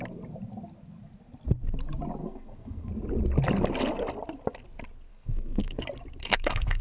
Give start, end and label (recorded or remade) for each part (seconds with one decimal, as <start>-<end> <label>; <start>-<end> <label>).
0.0-2.2 recorded; 2.2-2.9 remade; 2.9-5.1 recorded; 5.1-5.8 remade; 5.8-6.2 recorded; 6.2-6.8 remade